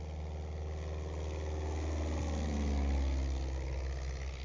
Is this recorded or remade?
recorded